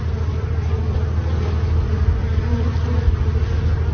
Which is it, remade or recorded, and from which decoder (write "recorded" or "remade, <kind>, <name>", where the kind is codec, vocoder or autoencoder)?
recorded